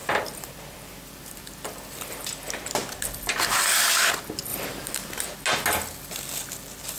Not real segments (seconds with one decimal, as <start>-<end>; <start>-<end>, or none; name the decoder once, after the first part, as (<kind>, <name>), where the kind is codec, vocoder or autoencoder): 0.0-1.3 (vocoder, BigVGAN v2); 4.5-5.2